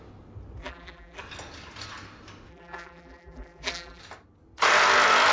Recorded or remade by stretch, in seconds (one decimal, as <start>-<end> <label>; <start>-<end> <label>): 0.0-0.6 recorded; 0.6-1.2 remade; 1.2-2.5 recorded; 2.5-4.0 remade; 4.0-5.3 recorded